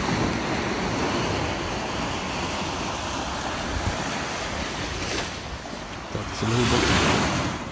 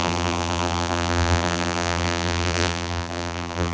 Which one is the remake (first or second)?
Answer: second